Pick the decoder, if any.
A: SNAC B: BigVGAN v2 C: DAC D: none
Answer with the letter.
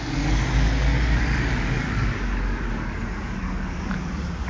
C